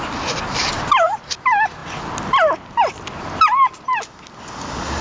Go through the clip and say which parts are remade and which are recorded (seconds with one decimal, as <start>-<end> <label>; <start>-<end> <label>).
0.0-5.0 recorded